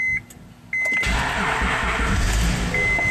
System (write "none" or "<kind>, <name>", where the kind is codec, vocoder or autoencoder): none